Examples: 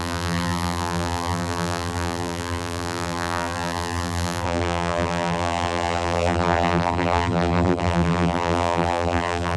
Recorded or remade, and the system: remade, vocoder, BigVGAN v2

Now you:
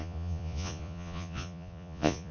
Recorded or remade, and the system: remade, vocoder, Vocos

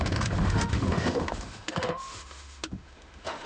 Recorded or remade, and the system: remade, autoencoder, DAC-VAE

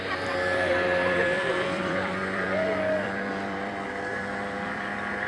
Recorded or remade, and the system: remade, vocoder, BigVGAN v2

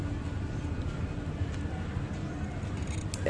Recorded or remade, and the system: recorded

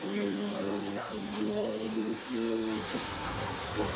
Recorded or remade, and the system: remade, codec, SNAC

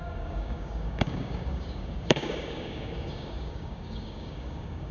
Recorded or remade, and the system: remade, codec, DAC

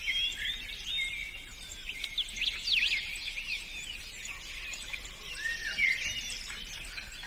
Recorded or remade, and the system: recorded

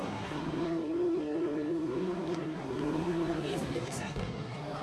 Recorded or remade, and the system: remade, codec, SNAC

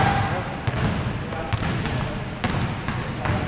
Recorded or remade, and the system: recorded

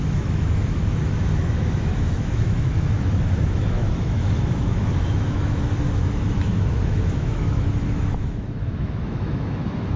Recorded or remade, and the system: remade, autoencoder, DAC-VAE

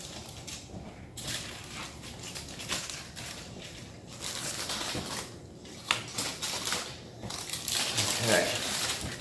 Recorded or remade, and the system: recorded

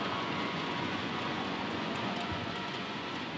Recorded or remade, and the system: remade, vocoder, Vocos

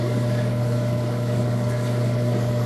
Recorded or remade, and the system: remade, codec, DAC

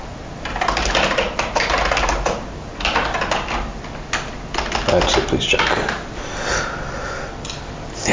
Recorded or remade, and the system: recorded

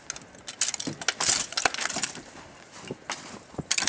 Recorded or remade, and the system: recorded